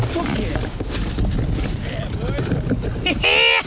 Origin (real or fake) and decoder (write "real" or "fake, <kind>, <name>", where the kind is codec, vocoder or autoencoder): real